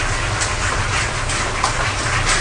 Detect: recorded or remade recorded